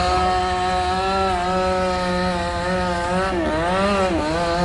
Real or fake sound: real